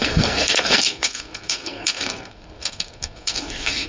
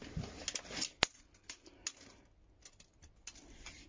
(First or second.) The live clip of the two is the second